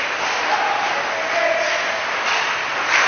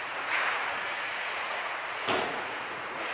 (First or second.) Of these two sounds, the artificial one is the second